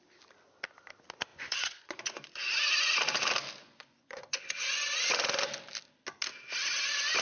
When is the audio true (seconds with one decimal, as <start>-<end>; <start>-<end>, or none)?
0.0-1.3; 2.4-3.6; 4.8-7.2